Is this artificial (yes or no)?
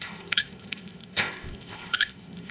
yes